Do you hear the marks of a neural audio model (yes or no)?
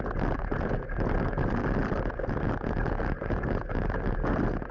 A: no